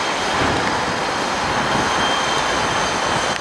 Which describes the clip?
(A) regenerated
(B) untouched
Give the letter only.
B